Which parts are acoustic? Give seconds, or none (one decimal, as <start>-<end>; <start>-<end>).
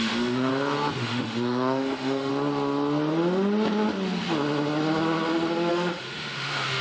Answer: 0.5-1.0; 2.3-5.7